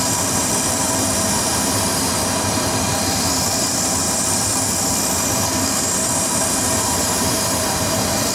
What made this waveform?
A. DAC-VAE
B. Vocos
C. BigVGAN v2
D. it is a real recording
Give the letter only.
C